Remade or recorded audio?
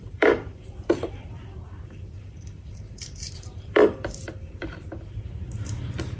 remade